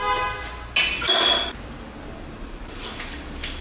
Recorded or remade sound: recorded